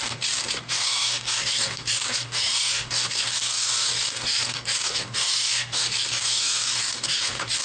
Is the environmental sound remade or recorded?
remade